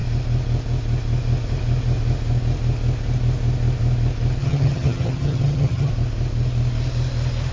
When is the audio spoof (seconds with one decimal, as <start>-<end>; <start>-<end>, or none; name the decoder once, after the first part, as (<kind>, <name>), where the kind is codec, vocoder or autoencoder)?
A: 4.4-5.9 (vocoder, HiFi-GAN)